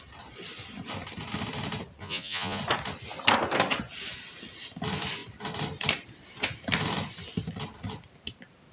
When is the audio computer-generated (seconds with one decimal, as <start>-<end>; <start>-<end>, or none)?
2.0-2.6